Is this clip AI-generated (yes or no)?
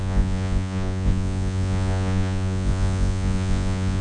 yes